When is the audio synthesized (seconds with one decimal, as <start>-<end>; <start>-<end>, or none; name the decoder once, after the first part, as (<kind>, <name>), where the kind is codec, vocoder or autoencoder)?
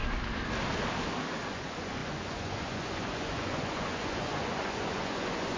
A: 1.5-5.6 (vocoder, Vocos)